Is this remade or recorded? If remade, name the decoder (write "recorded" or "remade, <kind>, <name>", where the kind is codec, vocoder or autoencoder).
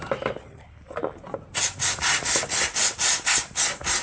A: recorded